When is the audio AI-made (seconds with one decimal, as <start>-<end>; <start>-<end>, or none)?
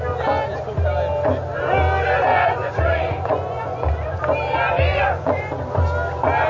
2.3-4.2; 4.9-5.5